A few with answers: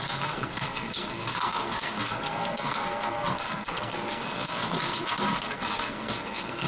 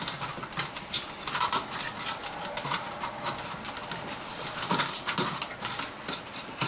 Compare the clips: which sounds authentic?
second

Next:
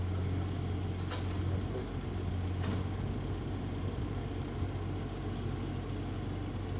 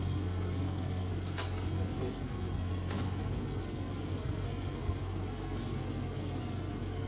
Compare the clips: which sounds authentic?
first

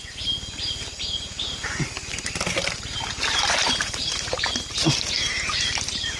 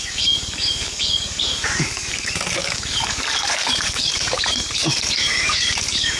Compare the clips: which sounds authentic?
first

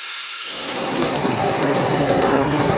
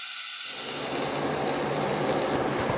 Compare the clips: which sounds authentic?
second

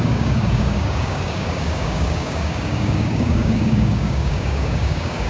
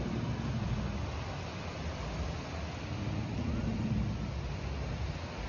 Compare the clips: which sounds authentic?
second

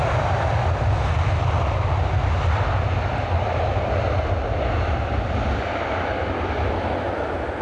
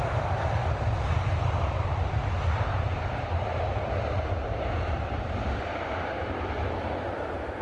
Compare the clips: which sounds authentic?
first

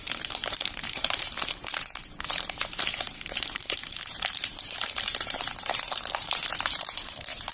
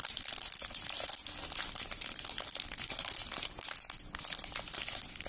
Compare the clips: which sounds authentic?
second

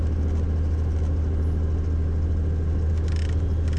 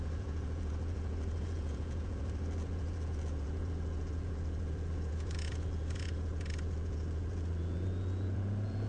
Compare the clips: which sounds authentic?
first